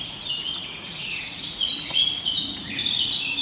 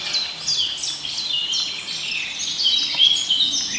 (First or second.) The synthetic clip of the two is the first